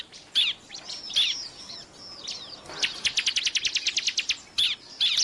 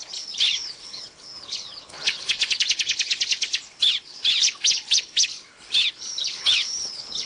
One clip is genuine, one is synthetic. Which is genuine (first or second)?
first